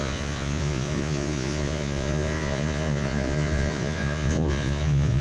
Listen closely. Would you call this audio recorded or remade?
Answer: remade